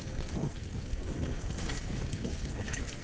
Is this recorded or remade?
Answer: remade